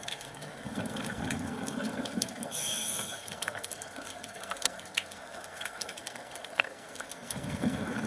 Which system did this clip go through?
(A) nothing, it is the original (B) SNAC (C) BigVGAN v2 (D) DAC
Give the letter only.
B